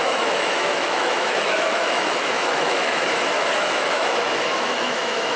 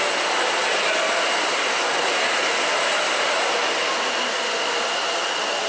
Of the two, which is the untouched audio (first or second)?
second